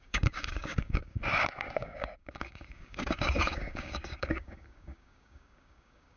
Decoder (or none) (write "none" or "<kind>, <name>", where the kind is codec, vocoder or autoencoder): codec, DAC